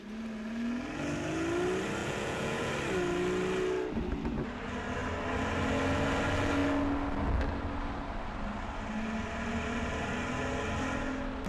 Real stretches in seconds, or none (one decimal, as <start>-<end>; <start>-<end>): 0.0-2.0; 2.7-11.5